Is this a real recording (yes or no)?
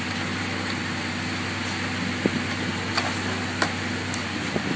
yes